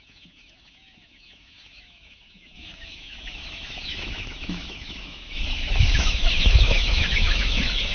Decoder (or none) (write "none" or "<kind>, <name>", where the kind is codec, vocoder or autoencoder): autoencoder, DAC-VAE